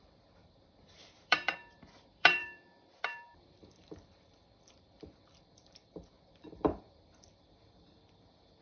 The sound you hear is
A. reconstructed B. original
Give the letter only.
A